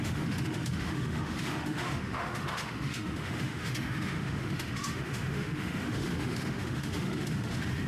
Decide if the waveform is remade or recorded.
remade